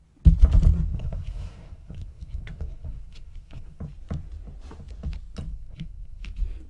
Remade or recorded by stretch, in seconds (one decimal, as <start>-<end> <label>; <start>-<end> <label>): 0.0-0.9 recorded; 0.9-3.8 remade; 3.8-5.5 recorded; 5.5-6.2 remade; 6.2-6.7 recorded